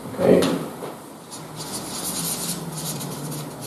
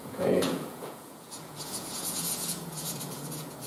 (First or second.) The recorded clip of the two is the first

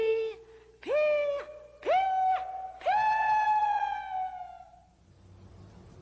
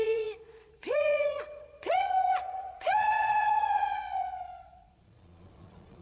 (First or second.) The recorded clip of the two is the first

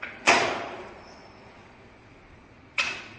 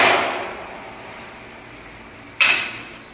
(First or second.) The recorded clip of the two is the second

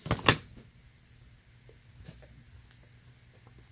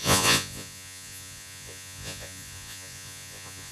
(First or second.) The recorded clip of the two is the first